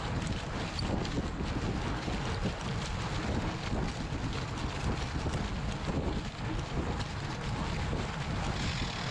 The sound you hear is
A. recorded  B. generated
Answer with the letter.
A